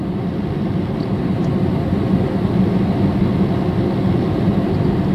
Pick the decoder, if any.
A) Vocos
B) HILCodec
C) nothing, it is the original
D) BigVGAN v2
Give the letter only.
C